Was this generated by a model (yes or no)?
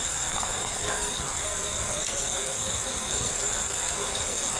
yes